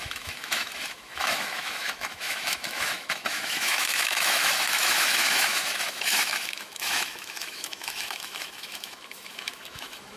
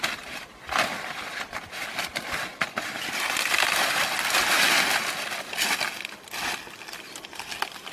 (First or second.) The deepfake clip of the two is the first